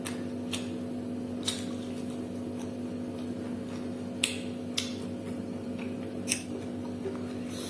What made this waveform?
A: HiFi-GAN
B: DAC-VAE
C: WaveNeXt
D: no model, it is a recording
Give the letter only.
D